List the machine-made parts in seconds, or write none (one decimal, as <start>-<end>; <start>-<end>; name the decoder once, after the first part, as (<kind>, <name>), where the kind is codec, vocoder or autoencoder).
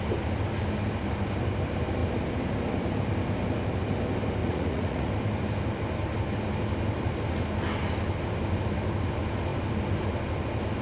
4.4-5.1 (vocoder, Vocos)